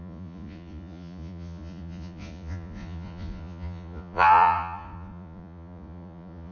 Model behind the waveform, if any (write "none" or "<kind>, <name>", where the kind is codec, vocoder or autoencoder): vocoder, Vocos